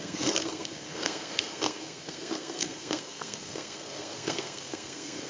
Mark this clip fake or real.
fake